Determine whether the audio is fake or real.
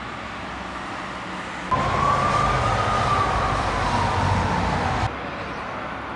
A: real